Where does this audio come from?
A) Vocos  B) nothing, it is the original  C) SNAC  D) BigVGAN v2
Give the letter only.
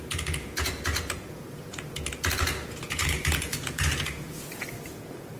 A